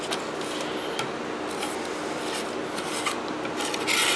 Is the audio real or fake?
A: real